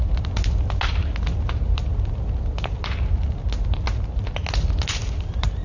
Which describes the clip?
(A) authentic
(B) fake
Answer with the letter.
A